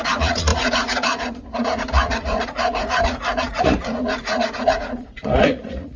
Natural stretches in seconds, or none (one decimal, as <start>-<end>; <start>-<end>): none

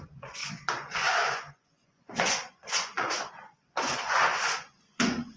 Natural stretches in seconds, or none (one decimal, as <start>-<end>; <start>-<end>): none